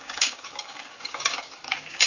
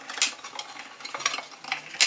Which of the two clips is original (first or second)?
second